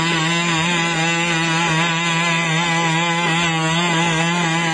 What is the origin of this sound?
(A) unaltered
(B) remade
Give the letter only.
A